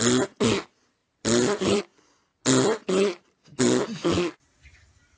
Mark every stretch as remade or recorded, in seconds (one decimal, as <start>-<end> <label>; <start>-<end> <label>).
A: 0.0-1.0 recorded; 1.0-1.8 remade; 1.8-5.2 recorded